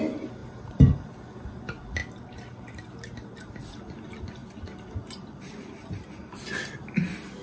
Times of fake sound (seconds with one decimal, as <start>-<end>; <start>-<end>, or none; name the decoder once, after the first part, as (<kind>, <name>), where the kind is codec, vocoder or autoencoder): 0.4-1.2 (vocoder, BigVGAN v2); 2.0-3.6